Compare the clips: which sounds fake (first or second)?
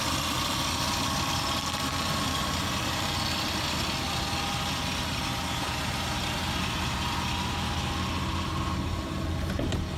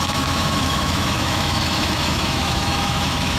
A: second